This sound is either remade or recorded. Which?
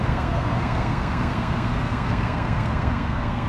remade